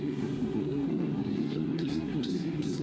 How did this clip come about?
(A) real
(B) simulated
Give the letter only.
B